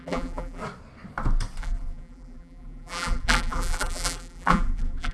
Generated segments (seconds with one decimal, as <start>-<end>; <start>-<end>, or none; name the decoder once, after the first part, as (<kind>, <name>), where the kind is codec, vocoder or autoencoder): 0.0-0.6 (vocoder, BigVGAN v2); 1.6-5.1